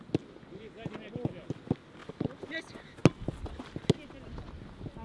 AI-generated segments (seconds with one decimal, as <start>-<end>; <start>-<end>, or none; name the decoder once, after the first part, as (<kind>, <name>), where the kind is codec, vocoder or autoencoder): 2.0-2.6 (vocoder, BigVGAN v2)